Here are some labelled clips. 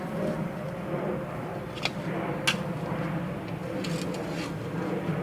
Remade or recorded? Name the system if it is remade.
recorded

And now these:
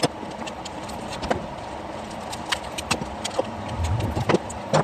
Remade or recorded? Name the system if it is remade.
recorded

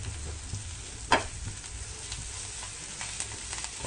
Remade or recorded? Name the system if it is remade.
recorded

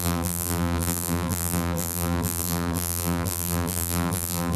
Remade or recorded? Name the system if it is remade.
remade, vocoder, BigVGAN v2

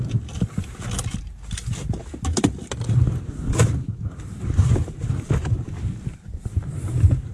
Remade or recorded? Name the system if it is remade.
recorded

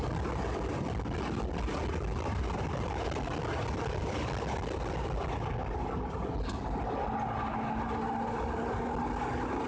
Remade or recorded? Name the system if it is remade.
recorded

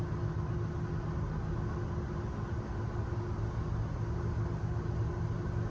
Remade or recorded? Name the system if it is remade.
recorded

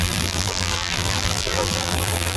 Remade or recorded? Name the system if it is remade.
remade, vocoder, BigVGAN v2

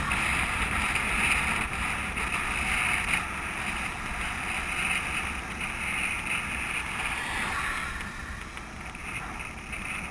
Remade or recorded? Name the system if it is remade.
recorded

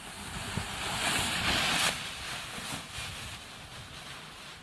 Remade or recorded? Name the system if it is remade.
recorded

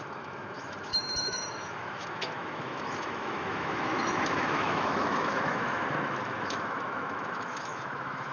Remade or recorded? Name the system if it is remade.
remade, autoencoder, DAC-VAE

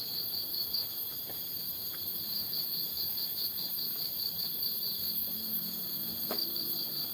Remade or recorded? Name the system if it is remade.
remade, autoencoder, DAC-VAE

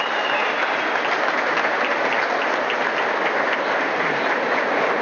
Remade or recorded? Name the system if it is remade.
recorded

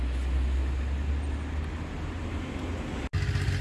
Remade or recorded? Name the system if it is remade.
recorded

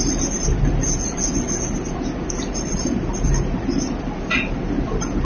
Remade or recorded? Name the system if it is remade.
recorded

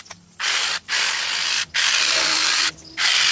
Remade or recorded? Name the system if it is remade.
recorded